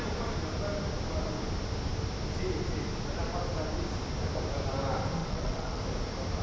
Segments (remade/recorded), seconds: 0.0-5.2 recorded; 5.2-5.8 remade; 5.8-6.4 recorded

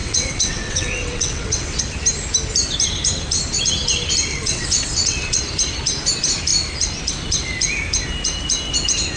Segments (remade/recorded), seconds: 0.0-1.8 remade; 1.8-4.3 recorded; 4.3-5.4 remade; 5.4-9.2 recorded